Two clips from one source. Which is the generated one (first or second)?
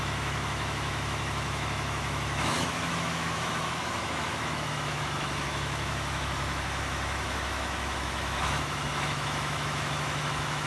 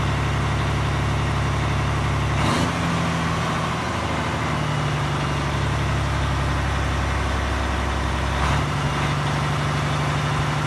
first